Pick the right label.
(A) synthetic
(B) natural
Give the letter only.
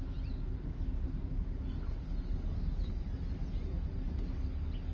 B